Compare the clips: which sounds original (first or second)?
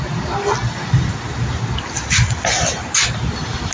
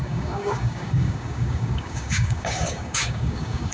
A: first